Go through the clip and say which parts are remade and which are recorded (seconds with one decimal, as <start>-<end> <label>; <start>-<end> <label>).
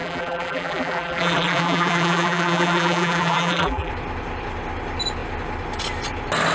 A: 0.0-3.9 remade; 3.9-6.5 recorded